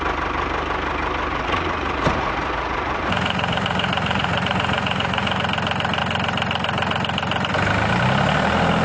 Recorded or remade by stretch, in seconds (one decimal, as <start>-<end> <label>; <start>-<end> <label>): 0.0-1.3 recorded; 1.3-5.4 remade; 5.4-8.8 recorded